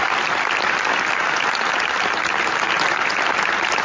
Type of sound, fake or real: real